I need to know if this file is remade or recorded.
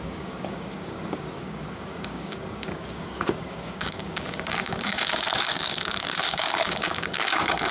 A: remade